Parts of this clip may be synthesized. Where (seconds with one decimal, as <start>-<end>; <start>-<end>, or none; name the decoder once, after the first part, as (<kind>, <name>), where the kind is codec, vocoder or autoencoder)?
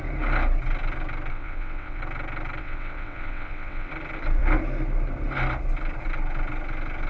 1.3-2.0 (vocoder, WaveNeXt); 2.6-3.9